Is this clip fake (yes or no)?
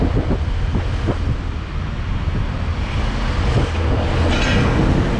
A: no